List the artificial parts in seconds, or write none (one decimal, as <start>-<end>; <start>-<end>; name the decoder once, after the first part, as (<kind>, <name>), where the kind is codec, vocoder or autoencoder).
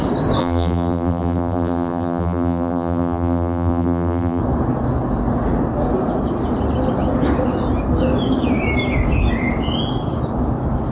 0.4-4.4 (vocoder, BigVGAN v2)